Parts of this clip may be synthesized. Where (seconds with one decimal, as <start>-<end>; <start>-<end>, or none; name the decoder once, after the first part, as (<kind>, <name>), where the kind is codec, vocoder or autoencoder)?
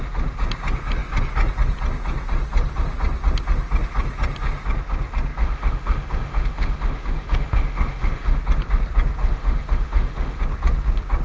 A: 5.4-8.4 (autoencoder, DAC-VAE); 9.2-10.4